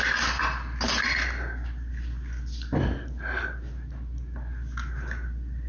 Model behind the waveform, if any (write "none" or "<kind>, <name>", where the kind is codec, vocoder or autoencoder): none